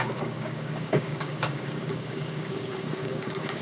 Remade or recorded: remade